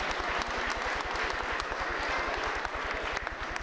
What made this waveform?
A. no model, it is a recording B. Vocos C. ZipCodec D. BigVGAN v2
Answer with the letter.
A